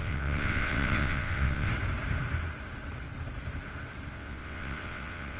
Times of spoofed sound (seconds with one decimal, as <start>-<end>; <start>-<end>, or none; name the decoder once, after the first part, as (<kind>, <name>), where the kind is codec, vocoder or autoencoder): 0.0-1.7 (vocoder, WaveNeXt); 4.1-5.4